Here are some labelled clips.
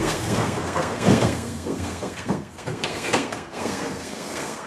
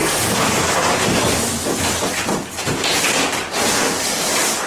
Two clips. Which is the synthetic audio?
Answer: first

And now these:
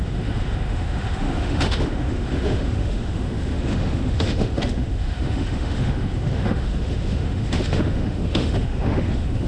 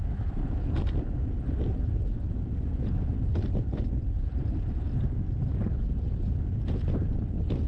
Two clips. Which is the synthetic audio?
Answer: first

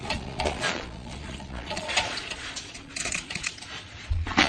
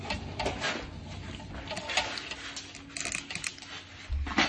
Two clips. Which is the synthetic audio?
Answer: first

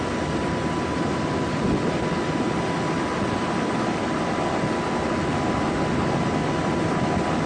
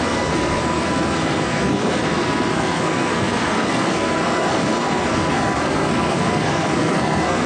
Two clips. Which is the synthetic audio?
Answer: second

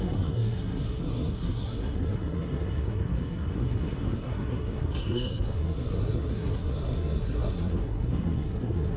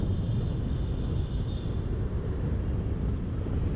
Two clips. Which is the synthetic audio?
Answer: first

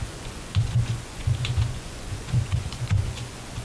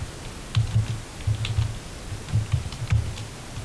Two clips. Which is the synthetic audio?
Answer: first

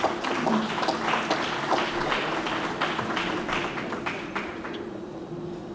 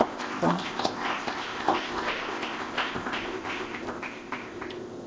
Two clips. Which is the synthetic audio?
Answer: second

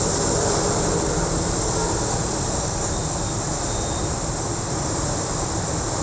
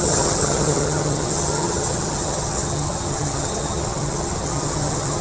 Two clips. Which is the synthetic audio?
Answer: second